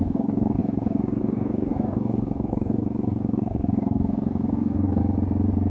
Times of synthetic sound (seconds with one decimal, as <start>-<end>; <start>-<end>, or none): 0.0-5.0